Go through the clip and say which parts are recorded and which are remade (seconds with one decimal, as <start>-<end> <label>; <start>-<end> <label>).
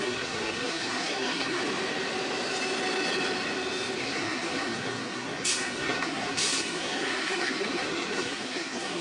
0.0-1.6 remade; 1.6-4.0 recorded; 4.0-9.0 remade